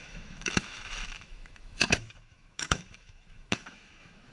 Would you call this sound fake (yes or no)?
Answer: yes